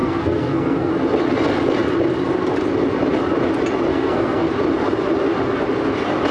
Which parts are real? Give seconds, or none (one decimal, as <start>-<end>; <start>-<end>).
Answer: 0.9-3.9; 4.5-6.3